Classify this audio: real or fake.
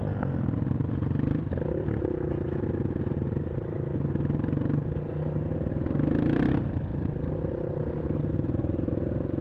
real